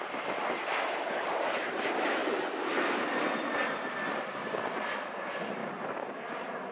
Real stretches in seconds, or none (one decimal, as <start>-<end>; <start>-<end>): 0.0-6.7

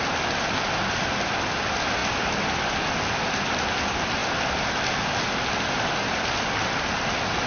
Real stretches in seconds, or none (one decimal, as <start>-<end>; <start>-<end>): 0.0-7.5